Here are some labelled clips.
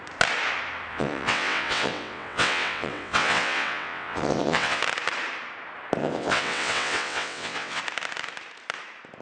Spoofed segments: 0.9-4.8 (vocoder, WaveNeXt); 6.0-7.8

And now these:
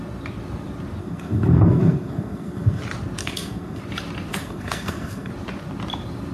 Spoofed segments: 1.0-2.8 (codec, SNAC); 3.2-3.8; 4.3-5.3

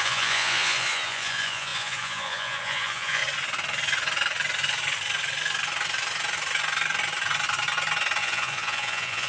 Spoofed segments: 0.0-3.2 (vocoder, Vocos); 8.2-9.3

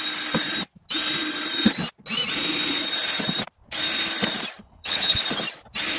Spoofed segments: 4.6-5.2 (codec, HILCodec)